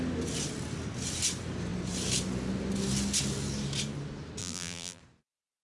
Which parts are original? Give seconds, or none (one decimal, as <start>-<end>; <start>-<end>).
0.0-4.4; 5.0-5.6